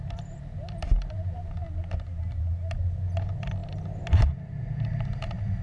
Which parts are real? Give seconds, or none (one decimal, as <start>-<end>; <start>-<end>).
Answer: 0.0-5.6